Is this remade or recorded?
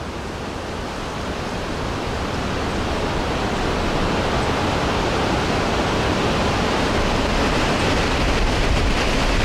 recorded